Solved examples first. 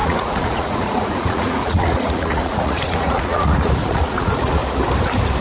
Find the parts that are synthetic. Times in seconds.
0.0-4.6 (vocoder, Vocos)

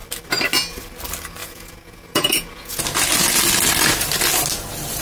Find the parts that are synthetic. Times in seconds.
1.4-2.8 (vocoder, Vocos)

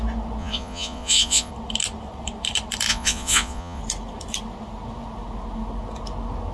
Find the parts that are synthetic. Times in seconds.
0.4-1.5 (vocoder, Vocos); 2.9-3.8

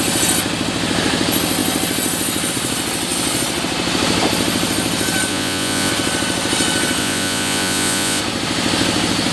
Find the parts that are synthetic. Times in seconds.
5.3-5.9 (vocoder, Vocos); 7.0-8.2

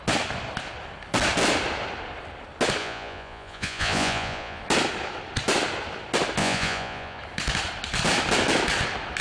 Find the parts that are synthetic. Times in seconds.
2.8-4.6 (vocoder, Vocos); 6.4-7.2